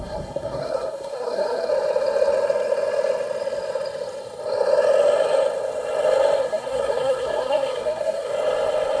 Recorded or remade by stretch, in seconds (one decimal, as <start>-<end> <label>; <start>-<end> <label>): 0.0-1.7 remade; 1.7-6.4 recorded; 6.4-8.3 remade; 8.3-9.0 recorded